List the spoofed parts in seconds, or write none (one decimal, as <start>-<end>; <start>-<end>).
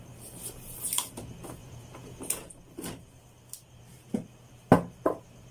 1.6-2.2